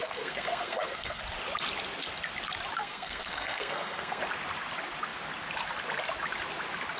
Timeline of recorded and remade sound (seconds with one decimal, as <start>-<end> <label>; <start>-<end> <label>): 0.0-1.2 remade; 1.2-2.8 recorded; 2.8-4.2 remade; 4.2-7.0 recorded